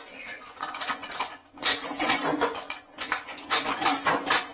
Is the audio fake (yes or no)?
yes